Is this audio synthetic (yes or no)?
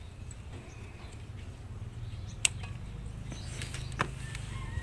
no